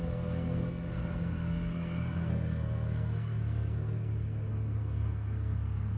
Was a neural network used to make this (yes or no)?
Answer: yes